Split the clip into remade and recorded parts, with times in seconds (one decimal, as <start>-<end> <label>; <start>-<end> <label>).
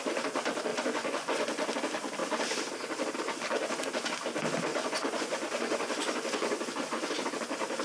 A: 0.0-0.7 recorded; 0.7-1.7 remade; 1.7-4.7 recorded; 4.7-7.3 remade; 7.3-7.8 recorded